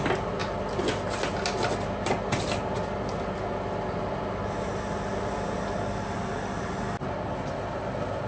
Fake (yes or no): no